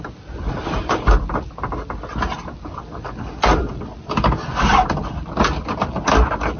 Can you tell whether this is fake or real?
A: real